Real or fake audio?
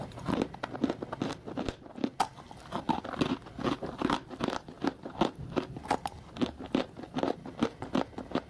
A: real